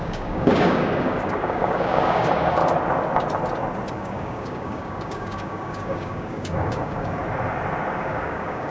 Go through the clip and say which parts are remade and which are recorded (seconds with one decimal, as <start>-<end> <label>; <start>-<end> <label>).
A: 0.0-2.6 remade; 2.6-3.9 recorded; 3.9-7.2 remade; 7.2-7.9 recorded; 7.9-8.7 remade